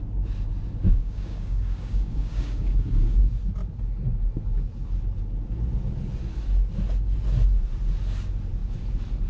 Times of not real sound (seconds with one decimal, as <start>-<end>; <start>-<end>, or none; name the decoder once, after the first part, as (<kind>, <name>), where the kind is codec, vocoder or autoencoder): 0.8-3.2 (codec, DAC)